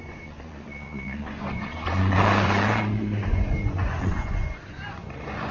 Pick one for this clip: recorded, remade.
remade